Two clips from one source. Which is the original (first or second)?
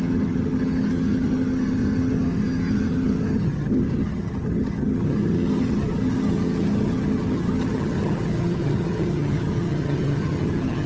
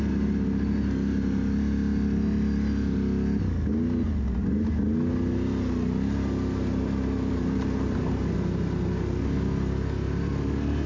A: second